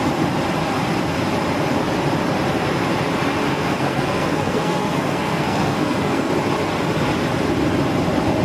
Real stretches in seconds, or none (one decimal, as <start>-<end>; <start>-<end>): 0.0-3.5; 6.3-8.4